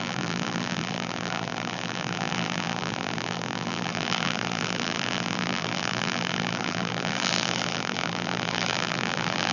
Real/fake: fake